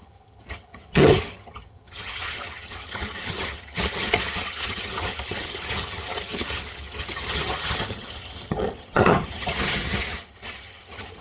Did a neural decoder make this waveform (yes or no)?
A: yes